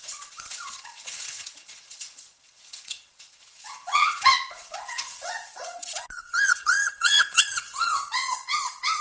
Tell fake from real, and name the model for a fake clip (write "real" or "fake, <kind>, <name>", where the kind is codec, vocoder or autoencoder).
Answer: fake, vocoder, WaveNeXt